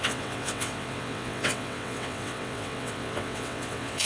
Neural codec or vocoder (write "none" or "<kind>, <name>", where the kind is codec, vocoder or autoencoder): vocoder, WaveNeXt